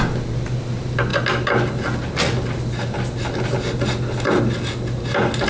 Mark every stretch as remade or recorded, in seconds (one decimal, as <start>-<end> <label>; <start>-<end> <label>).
0.0-5.5 recorded